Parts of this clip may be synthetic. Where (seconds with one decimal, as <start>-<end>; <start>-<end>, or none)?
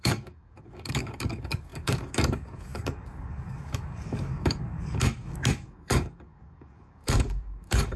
0.0-8.0